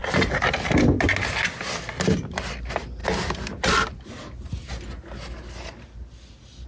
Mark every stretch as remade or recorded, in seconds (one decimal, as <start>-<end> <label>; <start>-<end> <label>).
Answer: 0.0-6.7 recorded